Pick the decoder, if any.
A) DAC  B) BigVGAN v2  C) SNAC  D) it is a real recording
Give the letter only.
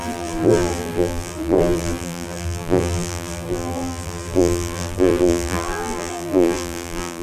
B